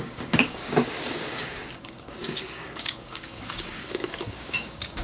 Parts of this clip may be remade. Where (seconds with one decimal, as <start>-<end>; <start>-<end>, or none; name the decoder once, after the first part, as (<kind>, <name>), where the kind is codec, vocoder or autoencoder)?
0.0-5.0 (codec, DAC)